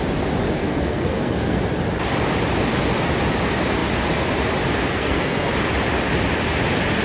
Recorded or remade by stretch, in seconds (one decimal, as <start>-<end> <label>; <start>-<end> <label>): 0.0-0.6 recorded; 0.6-1.6 remade; 1.6-4.9 recorded; 4.9-5.5 remade; 5.5-7.0 recorded